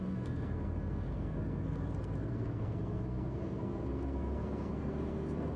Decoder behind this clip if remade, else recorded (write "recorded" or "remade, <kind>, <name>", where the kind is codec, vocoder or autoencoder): remade, codec, SNAC